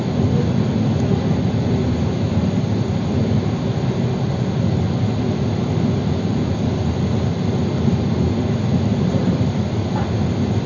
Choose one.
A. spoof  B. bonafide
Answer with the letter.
B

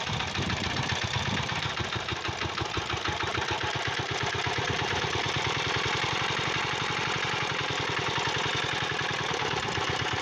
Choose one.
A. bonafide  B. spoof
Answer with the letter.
A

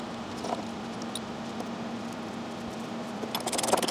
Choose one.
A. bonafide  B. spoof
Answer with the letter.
A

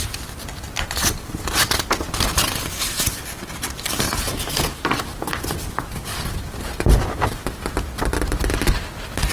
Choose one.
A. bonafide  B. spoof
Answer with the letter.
B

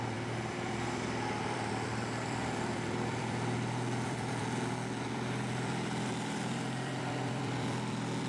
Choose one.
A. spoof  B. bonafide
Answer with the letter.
A